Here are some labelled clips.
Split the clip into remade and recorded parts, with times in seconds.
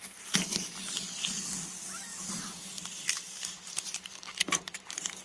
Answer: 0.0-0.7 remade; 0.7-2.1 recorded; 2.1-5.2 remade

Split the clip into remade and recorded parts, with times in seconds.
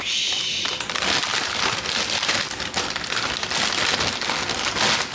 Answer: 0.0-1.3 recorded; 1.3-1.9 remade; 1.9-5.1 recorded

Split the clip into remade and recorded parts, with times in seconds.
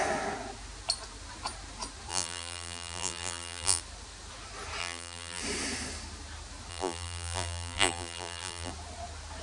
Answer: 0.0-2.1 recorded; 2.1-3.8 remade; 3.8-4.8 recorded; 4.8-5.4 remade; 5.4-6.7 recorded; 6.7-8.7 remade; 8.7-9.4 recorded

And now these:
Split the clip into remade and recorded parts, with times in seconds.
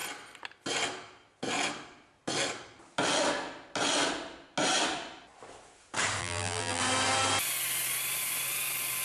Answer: 0.0-6.2 recorded; 6.2-6.8 remade; 6.8-9.0 recorded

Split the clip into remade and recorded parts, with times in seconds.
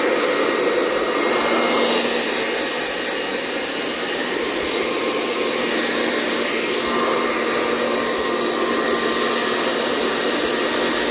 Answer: 0.0-3.3 recorded; 3.3-4.7 remade; 4.7-9.7 recorded; 9.7-10.5 remade; 10.5-11.1 recorded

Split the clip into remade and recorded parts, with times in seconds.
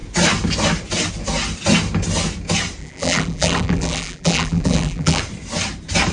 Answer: 0.0-2.8 recorded; 2.8-5.2 remade; 5.2-6.1 recorded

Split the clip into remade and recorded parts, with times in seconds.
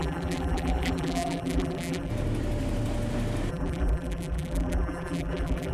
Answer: 0.0-2.1 remade; 2.1-3.5 recorded; 3.5-5.7 remade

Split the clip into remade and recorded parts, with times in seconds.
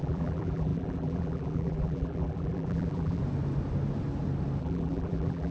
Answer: 0.0-3.2 remade; 3.2-4.6 recorded; 4.6-5.5 remade